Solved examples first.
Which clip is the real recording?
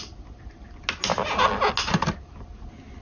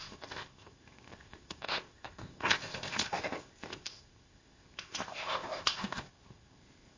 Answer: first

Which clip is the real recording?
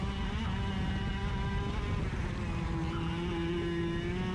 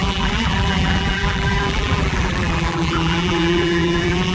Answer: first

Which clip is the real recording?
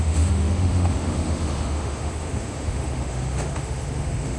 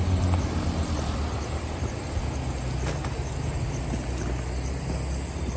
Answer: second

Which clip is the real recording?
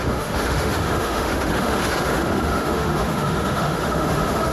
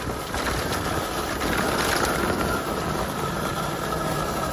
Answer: second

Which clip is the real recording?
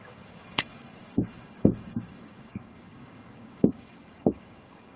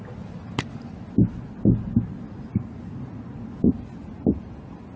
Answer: second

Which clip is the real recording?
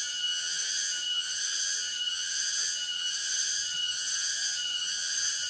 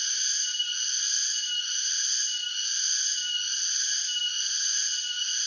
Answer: second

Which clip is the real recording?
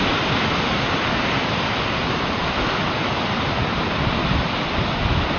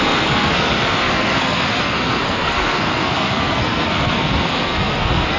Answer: first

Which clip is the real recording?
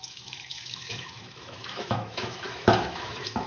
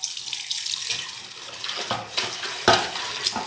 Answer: second